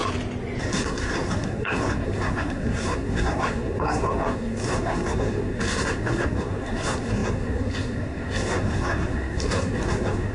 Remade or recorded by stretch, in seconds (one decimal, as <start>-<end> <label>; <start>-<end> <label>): 0.0-0.6 recorded; 0.6-10.3 remade